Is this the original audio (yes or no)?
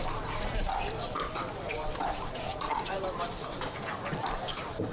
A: no